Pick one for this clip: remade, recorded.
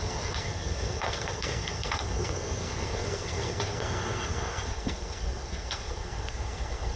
remade